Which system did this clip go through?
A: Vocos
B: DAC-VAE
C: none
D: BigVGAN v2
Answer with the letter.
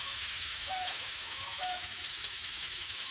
B